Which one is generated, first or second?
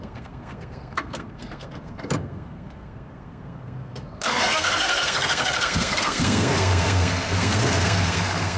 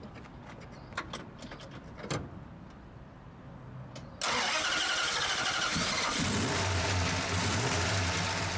first